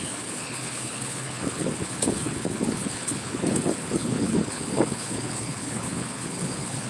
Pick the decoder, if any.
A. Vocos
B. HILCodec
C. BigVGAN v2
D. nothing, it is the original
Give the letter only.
B